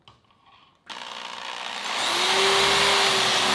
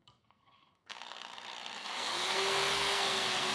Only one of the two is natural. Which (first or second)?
first